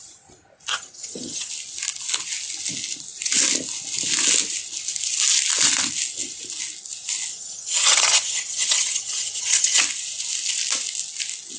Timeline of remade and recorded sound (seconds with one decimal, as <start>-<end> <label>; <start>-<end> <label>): 0.0-0.7 recorded; 0.7-1.5 remade; 1.5-7.3 recorded; 7.3-9.8 remade; 9.8-11.6 recorded

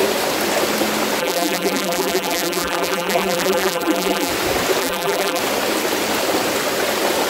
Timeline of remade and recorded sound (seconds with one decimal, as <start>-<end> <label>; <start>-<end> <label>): 0.0-1.2 recorded; 1.2-4.3 remade; 4.3-4.8 recorded; 4.8-5.4 remade; 5.4-7.3 recorded

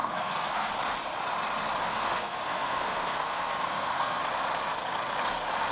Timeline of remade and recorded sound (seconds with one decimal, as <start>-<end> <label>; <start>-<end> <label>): 0.0-0.7 remade; 0.7-1.9 recorded; 1.9-4.2 remade; 4.2-5.7 recorded

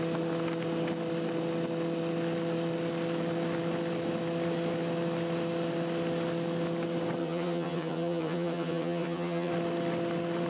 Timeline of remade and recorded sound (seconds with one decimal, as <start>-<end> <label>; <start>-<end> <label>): 0.0-7.2 recorded; 7.2-9.5 remade; 9.5-10.5 recorded

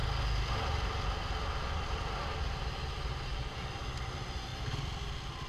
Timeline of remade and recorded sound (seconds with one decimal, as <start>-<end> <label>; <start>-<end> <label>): 0.0-5.5 recorded